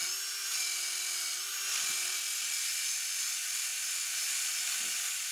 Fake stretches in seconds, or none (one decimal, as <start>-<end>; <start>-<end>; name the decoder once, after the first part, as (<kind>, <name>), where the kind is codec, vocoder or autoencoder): none